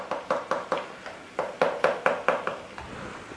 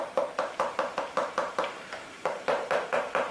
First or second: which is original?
first